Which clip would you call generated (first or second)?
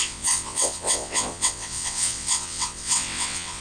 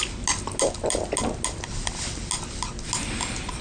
first